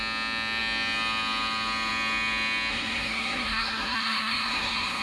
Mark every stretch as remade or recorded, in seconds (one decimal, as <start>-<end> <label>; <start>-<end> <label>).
0.0-2.7 recorded; 2.7-5.0 remade